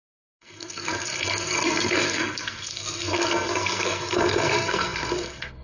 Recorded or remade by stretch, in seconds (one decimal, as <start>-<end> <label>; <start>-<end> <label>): 0.0-5.6 remade